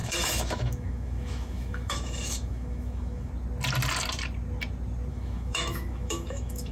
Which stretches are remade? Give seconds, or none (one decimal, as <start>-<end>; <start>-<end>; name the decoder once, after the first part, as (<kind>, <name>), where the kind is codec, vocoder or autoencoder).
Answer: 0.0-3.3 (autoencoder, DAC-VAE); 5.1-6.7